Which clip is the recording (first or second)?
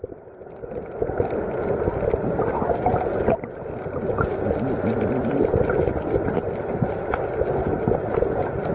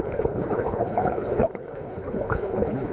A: first